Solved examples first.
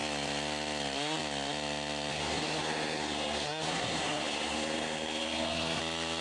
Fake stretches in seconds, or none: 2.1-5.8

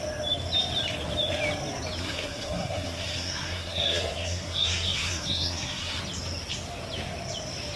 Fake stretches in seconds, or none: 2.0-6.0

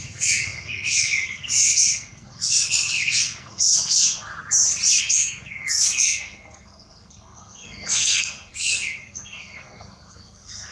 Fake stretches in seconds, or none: 0.0-4.3; 5.0-10.7